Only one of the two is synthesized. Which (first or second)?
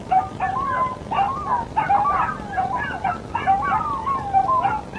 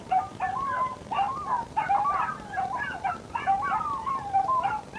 second